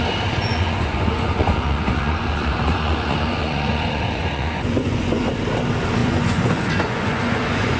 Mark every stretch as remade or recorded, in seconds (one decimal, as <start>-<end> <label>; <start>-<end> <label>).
0.0-0.5 recorded; 0.5-5.2 remade; 5.2-6.0 recorded; 6.0-7.8 remade